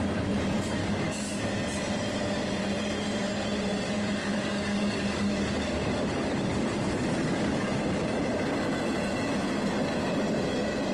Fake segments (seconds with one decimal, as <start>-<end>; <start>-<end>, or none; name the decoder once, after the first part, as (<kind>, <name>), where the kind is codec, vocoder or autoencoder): 0.8-1.4 (codec, DAC); 4.2-7.8